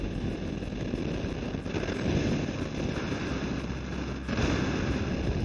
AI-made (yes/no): no